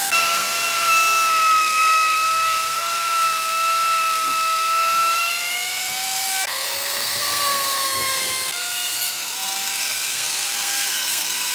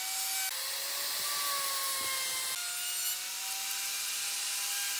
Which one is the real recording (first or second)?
second